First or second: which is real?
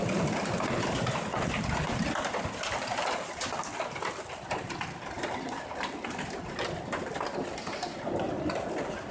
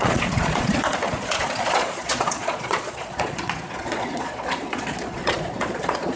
first